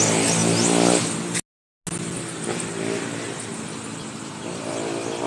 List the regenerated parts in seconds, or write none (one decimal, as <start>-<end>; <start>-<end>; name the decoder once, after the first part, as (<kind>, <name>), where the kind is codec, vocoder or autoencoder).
none

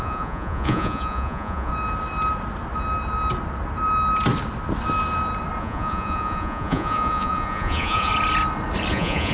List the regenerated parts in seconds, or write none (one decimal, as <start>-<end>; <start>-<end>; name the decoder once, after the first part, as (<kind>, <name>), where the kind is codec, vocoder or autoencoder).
0.0-1.7 (vocoder, Vocos); 5.6-8.1; 8.9-9.3

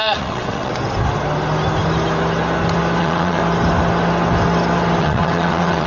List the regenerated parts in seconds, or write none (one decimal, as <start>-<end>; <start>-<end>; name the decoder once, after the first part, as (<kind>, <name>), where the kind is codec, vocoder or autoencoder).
0.0-0.7 (vocoder, WaveNeXt); 3.0-3.4; 5.0-5.9

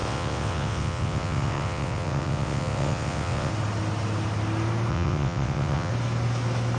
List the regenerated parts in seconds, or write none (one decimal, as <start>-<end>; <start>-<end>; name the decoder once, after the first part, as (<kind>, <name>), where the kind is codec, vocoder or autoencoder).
0.0-3.5 (vocoder, WaveNeXt); 4.9-5.9

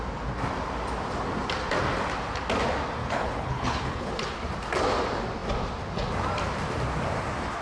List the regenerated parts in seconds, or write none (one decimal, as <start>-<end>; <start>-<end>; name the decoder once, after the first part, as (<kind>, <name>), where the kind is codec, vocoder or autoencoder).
3.0-4.1 (codec, HILCodec)

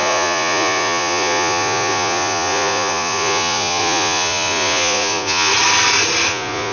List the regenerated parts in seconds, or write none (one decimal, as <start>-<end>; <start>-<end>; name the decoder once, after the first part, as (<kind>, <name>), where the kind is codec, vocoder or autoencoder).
0.0-5.5 (vocoder, Vocos); 6.3-6.7